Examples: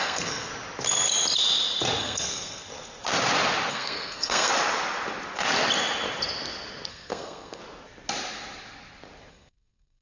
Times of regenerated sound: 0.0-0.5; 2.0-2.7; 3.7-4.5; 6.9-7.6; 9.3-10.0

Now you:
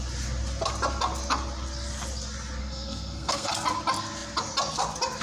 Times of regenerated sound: 2.6-3.5

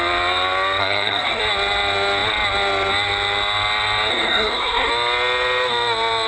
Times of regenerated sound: 0.8-1.4; 4.1-4.9

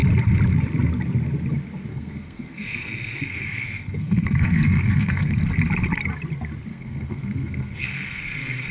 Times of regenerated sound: 1.9-5.3; 6.7-8.7

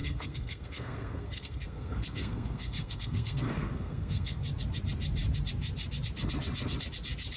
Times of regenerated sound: 0.0-4.4

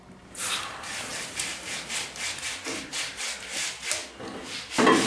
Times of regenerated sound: none

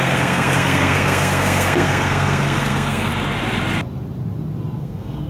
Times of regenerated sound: 0.0-3.1; 4.8-5.3

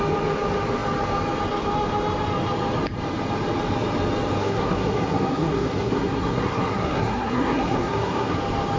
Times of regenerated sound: 4.4-8.4